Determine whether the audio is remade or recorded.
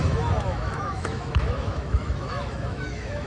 remade